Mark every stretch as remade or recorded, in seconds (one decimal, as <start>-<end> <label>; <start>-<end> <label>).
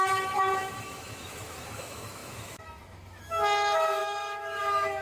0.0-5.0 remade